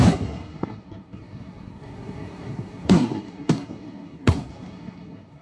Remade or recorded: remade